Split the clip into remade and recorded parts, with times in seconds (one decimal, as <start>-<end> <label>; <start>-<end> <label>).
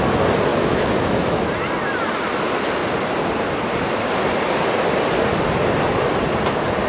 0.0-0.5 recorded; 0.5-1.5 remade; 1.5-6.9 recorded